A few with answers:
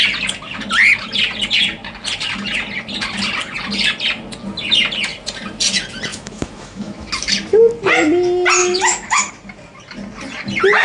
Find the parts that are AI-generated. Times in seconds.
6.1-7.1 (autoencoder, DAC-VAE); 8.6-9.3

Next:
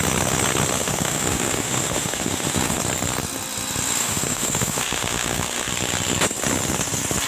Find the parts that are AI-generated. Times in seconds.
0.8-2.8 (autoencoder, DAC-VAE); 4.0-5.7

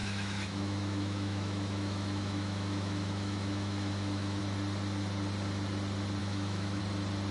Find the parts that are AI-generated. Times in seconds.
0.0-4.4 (autoencoder, DAC-VAE); 6.2-6.8

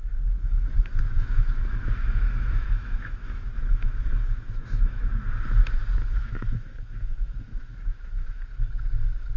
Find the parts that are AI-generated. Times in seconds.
0.4-5.1 (autoencoder, DAC-VAE); 6.0-8.4

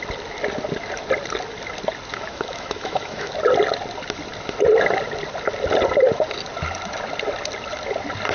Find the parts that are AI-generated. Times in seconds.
2.1-3.3 (autoencoder, DAC-VAE)

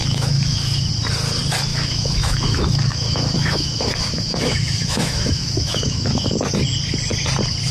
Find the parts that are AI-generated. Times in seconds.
0.0-0.9 (autoencoder, DAC-VAE); 1.7-6.3

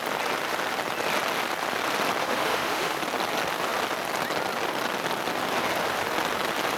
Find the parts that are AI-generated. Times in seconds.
2.2-3.0 (autoencoder, DAC-VAE)